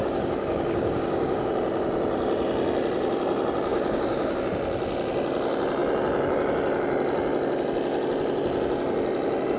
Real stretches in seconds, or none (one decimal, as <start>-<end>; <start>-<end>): 1.5-3.7; 4.4-9.6